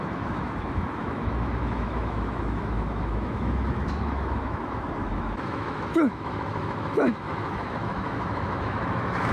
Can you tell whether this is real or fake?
fake